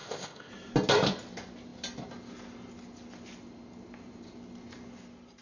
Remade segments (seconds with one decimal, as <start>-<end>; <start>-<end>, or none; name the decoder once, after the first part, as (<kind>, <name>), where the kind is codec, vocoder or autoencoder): 0.0-0.5 (codec, ZipCodec)